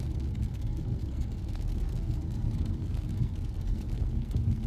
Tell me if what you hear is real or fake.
fake